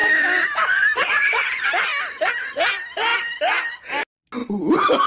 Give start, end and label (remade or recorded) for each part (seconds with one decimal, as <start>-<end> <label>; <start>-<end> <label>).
0.0-2.3 remade; 2.3-3.1 recorded; 3.1-3.9 remade; 3.9-4.4 recorded; 4.4-5.1 remade